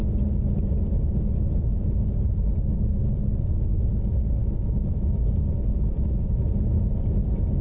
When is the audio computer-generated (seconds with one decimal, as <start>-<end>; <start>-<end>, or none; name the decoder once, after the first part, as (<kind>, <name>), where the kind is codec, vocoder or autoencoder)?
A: none